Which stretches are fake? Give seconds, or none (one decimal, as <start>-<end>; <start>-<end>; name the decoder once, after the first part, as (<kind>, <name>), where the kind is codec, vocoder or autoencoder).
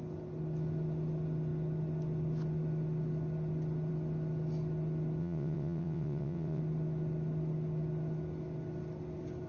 5.2-6.6 (vocoder, WaveNeXt)